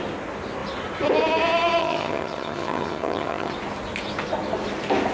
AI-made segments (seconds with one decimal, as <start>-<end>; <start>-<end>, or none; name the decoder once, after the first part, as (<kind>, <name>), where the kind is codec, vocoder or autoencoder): 1.8-3.5 (vocoder, HiFi-GAN)